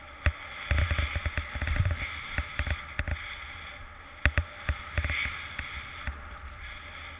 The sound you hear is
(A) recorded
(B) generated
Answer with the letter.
A